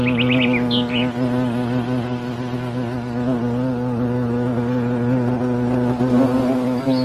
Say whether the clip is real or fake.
real